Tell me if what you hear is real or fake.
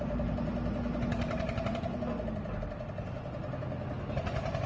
real